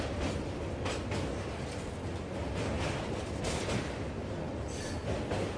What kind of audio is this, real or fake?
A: real